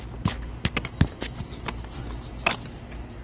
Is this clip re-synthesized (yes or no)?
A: no